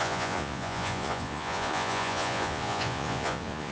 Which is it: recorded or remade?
remade